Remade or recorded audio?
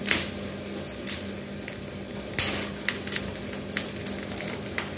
recorded